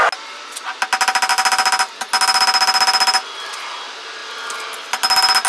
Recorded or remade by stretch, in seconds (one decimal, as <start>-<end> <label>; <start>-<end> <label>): 0.0-5.5 recorded